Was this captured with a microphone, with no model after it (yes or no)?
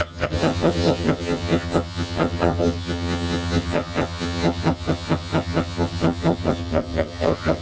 no